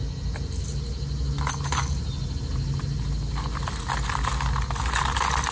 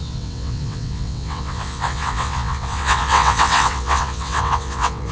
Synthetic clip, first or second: second